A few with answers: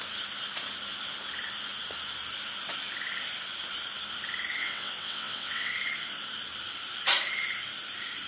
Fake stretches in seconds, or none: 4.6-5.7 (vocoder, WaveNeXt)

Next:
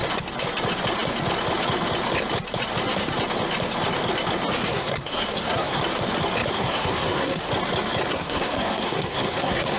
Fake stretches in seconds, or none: 4.7-5.8 (codec, SNAC); 6.5-7.5; 8.1-9.8

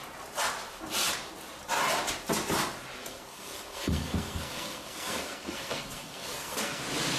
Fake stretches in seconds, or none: 3.1-6.8 (codec, SNAC)

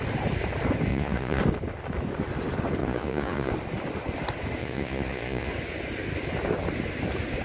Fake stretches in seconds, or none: 0.9-1.4 (vocoder, Vocos); 2.8-3.5; 4.6-5.5

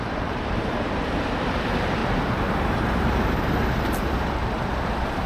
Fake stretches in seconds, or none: 0.0-2.0 (vocoder, BigVGAN v2); 2.5-5.3

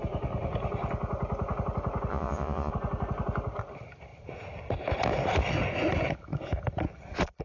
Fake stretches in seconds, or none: 2.1-2.7 (vocoder, Vocos)

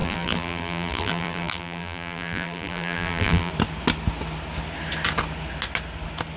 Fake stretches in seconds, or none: 0.0-3.5 (vocoder, BigVGAN v2)

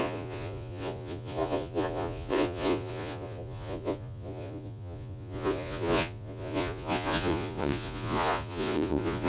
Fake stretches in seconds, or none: 0.0-9.3 (vocoder, Vocos)